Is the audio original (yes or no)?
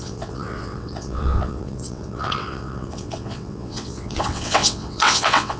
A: no